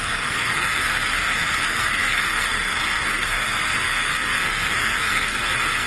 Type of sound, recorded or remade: remade